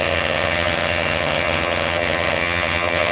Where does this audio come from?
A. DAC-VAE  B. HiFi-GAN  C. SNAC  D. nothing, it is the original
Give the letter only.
B